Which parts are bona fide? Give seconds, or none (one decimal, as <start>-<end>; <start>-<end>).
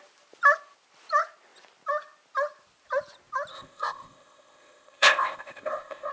0.0-3.5